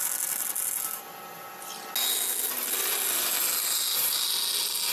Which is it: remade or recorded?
recorded